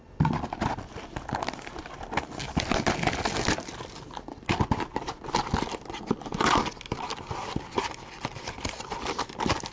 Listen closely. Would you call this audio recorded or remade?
recorded